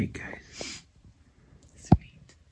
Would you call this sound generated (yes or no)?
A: yes